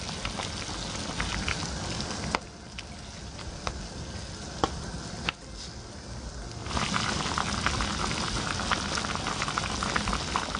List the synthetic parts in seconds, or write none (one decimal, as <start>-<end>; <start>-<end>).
none